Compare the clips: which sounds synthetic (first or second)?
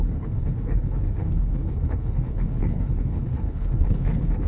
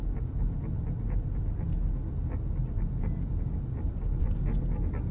first